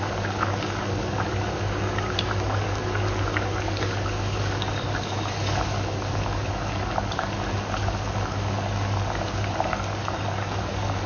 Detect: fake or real fake